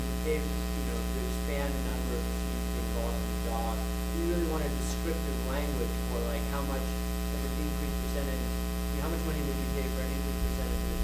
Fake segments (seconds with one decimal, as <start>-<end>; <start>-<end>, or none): none

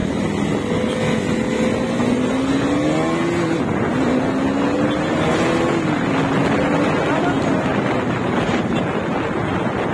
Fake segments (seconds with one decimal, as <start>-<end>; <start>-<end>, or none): 8.2-8.8

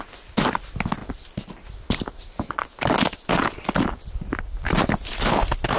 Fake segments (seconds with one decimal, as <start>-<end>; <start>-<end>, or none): none

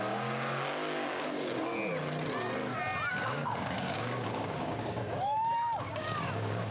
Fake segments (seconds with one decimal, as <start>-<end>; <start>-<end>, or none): 0.0-1.7; 3.1-6.7

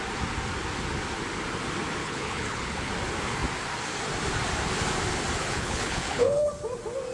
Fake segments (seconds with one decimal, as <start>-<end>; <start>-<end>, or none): 2.0-2.9; 5.5-6.5

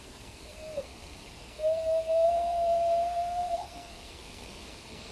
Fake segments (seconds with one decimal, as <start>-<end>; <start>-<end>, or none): 0.0-5.1

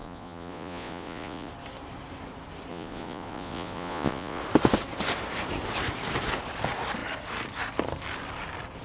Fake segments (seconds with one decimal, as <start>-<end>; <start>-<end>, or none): 0.0-1.5; 2.7-4.4

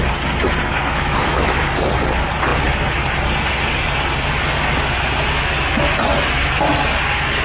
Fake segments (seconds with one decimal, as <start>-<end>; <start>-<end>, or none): 0.8-1.6